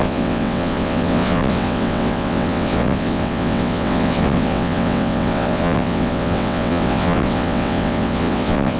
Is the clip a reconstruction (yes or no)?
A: yes